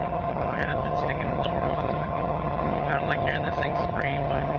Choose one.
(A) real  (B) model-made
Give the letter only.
B